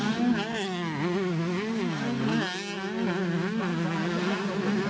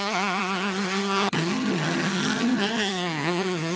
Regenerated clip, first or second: second